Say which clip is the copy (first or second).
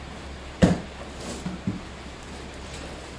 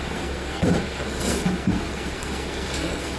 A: second